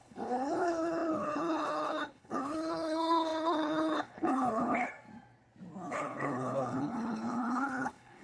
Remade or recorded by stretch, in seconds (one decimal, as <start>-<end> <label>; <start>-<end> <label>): 0.0-4.9 remade; 4.9-5.9 recorded; 5.9-8.2 remade